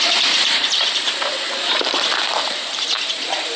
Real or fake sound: fake